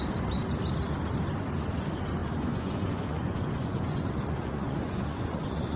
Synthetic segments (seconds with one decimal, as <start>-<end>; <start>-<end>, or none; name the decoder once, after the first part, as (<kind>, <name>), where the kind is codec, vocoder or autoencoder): 2.2-5.8 (vocoder, Vocos)